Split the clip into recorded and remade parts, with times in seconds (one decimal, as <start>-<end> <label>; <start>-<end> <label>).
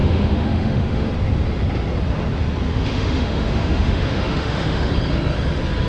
0.0-1.1 remade; 1.1-2.7 recorded; 2.7-4.9 remade; 4.9-5.9 recorded